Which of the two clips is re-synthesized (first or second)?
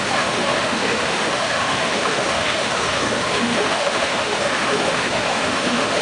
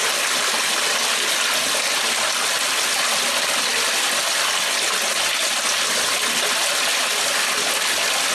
first